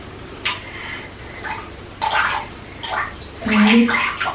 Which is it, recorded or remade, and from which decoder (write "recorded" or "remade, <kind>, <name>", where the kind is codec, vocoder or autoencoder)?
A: recorded